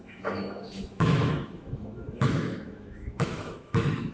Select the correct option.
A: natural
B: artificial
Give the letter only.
B